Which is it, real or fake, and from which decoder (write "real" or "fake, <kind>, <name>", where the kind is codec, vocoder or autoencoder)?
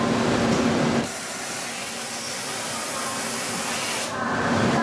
real